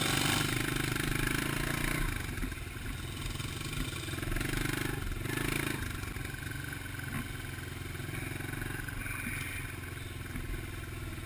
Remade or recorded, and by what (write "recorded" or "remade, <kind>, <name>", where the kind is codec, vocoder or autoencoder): recorded